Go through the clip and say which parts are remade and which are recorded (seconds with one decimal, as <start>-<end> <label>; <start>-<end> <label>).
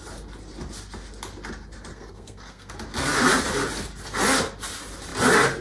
0.0-1.9 recorded; 1.9-2.7 remade; 2.7-5.6 recorded